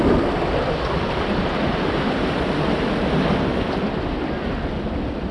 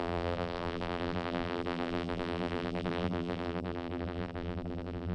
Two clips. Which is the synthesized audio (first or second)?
second